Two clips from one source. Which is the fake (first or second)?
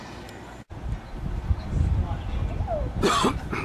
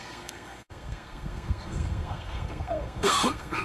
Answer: second